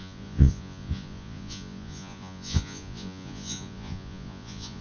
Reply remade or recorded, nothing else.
remade